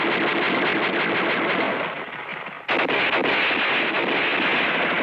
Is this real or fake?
real